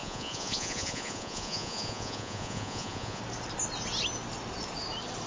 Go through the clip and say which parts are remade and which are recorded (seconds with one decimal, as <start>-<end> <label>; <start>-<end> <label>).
0.0-3.2 remade; 3.2-5.3 recorded